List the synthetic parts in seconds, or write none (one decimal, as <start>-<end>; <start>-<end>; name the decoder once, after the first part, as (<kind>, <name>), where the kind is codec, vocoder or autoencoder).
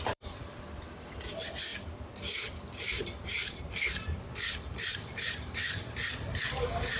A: 0.0-0.4 (vocoder, BigVGAN v2); 1.1-5.6; 6.2-7.0